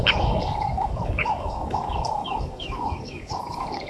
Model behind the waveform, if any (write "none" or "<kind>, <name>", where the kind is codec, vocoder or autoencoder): codec, DAC